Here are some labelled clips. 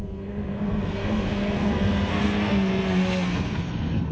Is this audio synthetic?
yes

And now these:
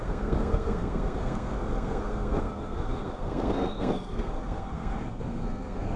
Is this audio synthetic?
yes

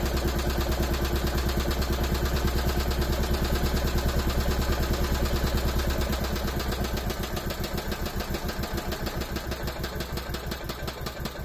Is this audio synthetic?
no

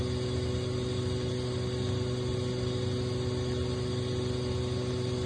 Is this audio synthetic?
no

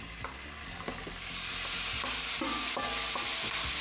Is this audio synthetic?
no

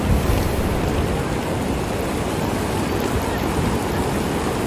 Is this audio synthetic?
no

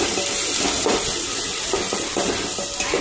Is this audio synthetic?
no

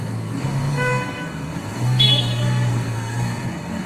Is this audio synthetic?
yes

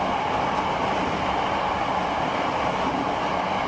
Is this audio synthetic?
no